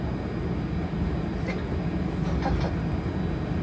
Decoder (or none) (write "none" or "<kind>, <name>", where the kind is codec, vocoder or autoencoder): none